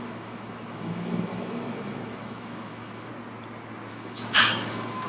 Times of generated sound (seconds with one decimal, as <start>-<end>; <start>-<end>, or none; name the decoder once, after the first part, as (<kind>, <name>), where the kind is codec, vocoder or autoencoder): 0.0-3.1 (autoencoder, DAC-VAE); 3.9-5.1